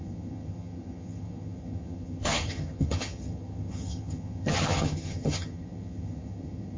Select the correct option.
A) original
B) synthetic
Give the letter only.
B